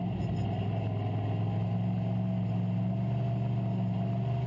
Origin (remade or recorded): recorded